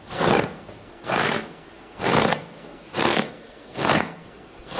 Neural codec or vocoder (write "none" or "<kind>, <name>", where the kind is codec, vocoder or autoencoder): codec, SNAC